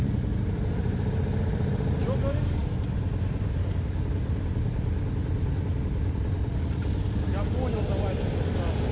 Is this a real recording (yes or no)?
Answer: yes